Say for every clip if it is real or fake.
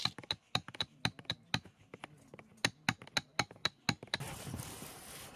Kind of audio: real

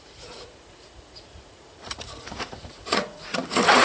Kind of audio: fake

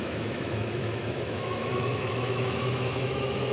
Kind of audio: fake